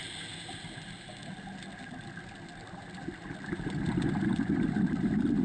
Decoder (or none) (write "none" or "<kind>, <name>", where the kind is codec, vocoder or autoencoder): none